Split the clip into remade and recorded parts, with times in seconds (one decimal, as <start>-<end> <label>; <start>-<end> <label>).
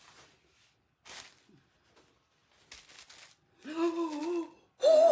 0.0-5.1 recorded